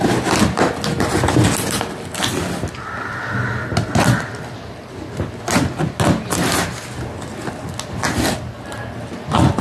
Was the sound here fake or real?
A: real